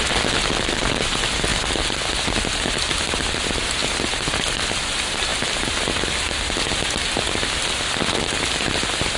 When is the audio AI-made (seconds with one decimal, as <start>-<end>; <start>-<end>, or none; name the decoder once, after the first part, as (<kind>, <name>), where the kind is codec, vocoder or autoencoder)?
none